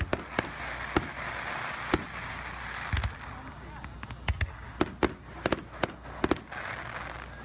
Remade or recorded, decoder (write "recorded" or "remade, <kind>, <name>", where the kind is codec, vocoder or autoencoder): recorded